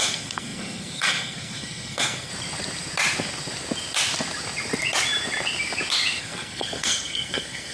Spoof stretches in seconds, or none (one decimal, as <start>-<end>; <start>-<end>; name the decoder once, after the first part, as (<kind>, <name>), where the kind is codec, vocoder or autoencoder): 0.0-2.3 (codec, SNAC); 6.2-7.7